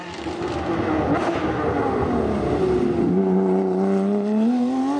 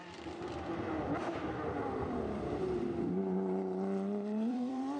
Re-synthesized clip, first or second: second